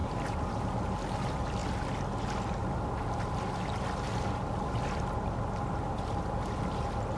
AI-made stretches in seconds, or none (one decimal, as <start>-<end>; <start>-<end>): 0.0-0.6